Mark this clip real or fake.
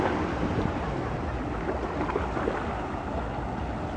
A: real